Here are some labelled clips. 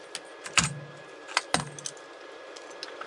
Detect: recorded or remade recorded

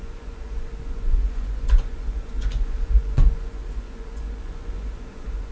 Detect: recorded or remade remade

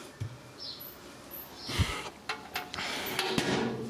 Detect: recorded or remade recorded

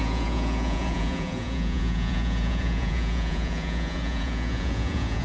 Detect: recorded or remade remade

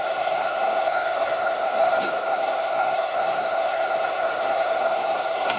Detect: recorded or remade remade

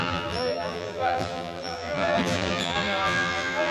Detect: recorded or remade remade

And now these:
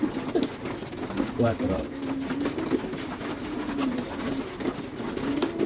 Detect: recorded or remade recorded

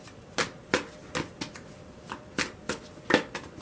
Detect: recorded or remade recorded